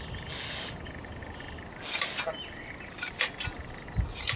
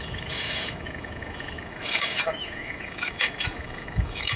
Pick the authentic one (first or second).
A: first